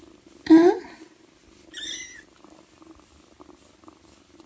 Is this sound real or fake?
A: real